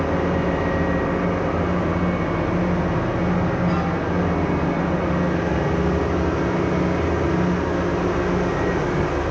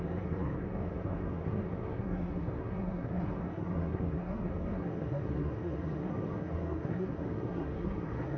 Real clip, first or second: first